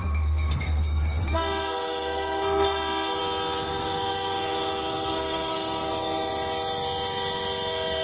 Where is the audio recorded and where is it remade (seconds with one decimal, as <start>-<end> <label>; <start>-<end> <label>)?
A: 0.0-3.2 remade; 3.2-3.7 recorded; 3.7-6.3 remade; 6.3-8.0 recorded